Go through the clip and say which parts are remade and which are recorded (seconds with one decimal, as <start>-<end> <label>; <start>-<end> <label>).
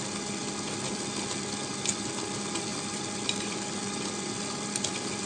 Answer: 0.0-5.3 recorded